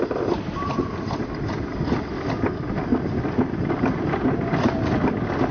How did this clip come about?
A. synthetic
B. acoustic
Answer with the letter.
B